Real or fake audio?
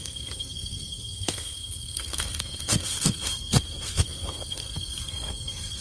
fake